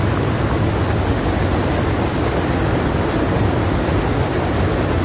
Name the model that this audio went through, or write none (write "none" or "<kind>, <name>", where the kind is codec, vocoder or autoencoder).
none